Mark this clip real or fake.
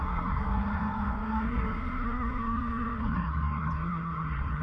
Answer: fake